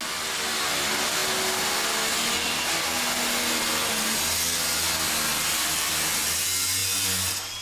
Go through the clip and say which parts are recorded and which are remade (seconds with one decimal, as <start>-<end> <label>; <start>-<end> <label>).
0.0-7.6 recorded